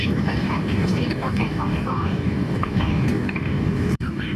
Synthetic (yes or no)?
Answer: yes